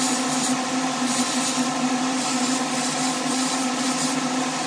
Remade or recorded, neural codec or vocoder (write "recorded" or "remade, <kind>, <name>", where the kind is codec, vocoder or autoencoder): recorded